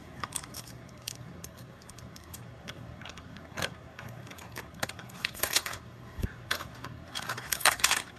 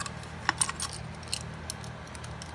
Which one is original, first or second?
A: second